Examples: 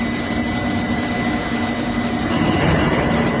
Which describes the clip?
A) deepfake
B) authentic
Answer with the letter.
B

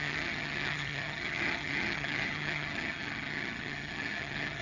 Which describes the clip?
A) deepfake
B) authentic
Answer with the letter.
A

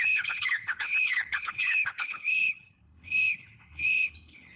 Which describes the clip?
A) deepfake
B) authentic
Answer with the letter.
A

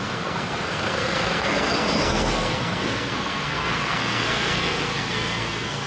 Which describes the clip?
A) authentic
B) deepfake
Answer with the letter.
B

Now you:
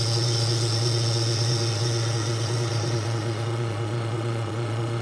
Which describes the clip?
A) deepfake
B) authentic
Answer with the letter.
A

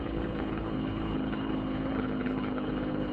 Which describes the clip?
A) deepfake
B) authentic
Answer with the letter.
A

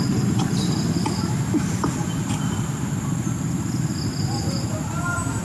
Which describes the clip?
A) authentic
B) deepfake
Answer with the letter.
A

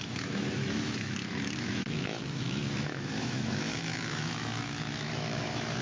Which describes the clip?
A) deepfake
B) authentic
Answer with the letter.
A